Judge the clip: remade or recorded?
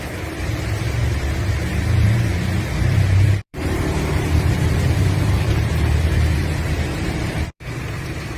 remade